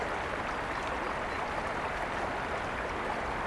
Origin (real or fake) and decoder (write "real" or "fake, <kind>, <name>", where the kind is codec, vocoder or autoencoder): real